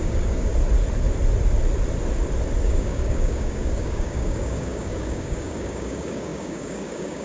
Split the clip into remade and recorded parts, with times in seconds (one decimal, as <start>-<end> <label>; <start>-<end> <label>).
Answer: 0.0-0.5 remade; 0.5-2.6 recorded; 2.6-7.2 remade